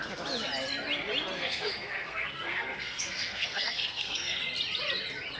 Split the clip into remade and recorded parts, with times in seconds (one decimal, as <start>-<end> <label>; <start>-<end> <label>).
0.0-1.3 recorded; 1.3-4.4 remade; 4.4-5.4 recorded